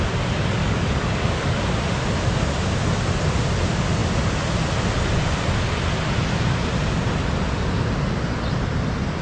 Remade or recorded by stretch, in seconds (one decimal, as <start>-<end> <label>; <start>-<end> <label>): 0.0-0.6 recorded; 0.6-1.7 remade; 1.7-9.2 recorded